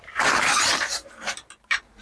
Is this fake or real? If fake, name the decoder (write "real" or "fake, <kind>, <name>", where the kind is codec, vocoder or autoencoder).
fake, vocoder, BigVGAN v2